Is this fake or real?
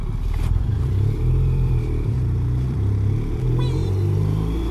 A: fake